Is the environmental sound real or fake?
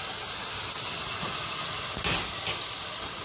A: real